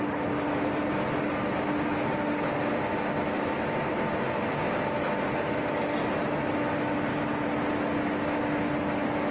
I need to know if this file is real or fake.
real